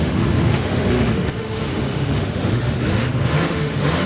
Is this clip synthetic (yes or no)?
yes